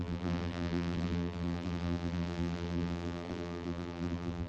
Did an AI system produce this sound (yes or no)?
yes